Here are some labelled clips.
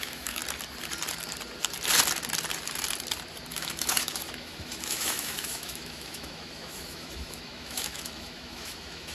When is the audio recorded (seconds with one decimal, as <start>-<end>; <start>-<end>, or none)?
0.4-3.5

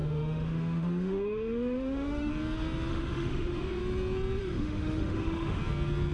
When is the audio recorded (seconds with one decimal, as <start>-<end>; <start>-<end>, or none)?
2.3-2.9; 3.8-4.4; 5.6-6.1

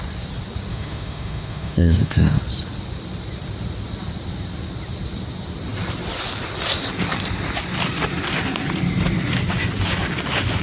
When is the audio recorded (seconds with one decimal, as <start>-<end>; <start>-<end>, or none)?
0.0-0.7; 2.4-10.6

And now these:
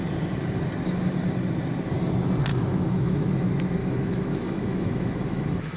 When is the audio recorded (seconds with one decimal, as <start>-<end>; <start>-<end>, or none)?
0.0-2.5; 3.3-3.8

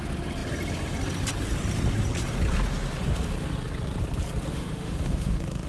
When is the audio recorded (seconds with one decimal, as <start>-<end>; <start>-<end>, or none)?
0.0-4.5

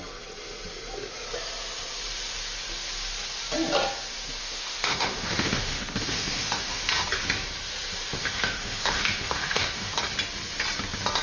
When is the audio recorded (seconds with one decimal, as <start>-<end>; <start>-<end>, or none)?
0.0-4.4; 6.8-8.2; 10.0-11.2

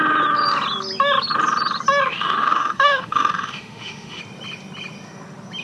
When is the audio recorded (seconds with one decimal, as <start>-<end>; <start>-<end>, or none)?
0.0-2.1; 4.2-5.6

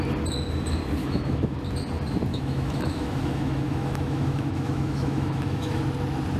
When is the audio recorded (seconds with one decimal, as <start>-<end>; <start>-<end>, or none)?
0.0-1.0; 1.6-2.3; 5.8-6.4